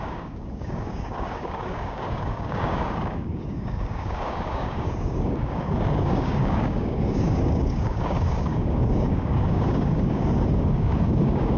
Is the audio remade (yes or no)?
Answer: yes